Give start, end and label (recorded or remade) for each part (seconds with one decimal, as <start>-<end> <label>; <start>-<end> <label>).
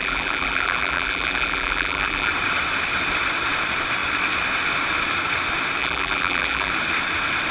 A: 0.0-2.3 remade; 2.3-5.8 recorded; 5.8-6.7 remade; 6.7-7.5 recorded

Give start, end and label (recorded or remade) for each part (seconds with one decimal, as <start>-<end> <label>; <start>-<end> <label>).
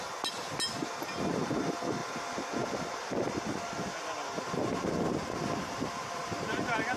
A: 0.0-7.0 recorded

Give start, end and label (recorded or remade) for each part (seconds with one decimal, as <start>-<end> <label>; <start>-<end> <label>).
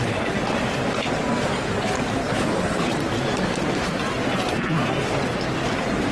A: 0.0-2.2 recorded; 2.2-2.9 remade; 2.9-6.1 recorded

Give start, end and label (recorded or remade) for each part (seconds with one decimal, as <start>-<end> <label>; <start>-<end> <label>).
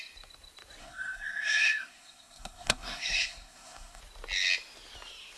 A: 0.0-0.8 recorded; 0.8-4.0 remade; 4.0-5.4 recorded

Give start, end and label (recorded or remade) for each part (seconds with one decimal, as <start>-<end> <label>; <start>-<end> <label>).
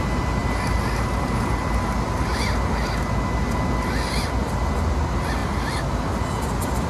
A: 0.0-6.9 recorded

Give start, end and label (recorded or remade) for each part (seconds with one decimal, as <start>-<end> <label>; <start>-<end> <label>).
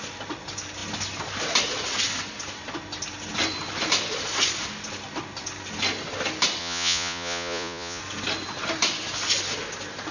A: 0.0-6.6 recorded; 6.6-8.0 remade; 8.0-10.1 recorded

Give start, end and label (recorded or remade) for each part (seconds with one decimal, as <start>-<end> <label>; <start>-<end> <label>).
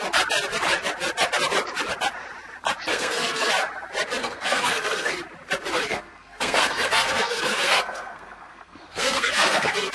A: 0.0-2.9 recorded; 2.9-3.5 remade; 3.5-4.2 recorded; 4.2-5.1 remade; 5.1-5.9 recorded; 5.9-9.9 remade